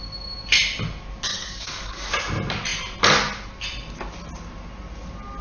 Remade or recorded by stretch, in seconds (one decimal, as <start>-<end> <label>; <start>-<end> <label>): 0.0-1.3 recorded; 1.3-2.1 remade; 2.1-5.4 recorded